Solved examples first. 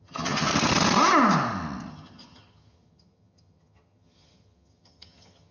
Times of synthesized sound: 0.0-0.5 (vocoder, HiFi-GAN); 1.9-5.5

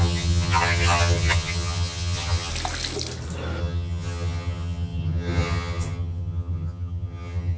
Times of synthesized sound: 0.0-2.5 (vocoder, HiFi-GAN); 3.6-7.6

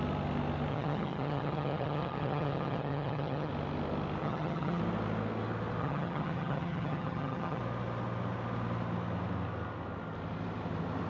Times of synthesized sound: 0.7-3.5 (vocoder, HiFi-GAN); 4.2-4.8; 5.8-7.6